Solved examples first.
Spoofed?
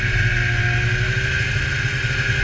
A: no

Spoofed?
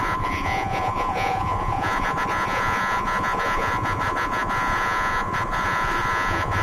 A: yes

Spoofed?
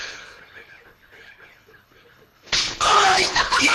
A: yes